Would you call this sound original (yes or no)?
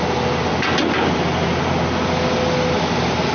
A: yes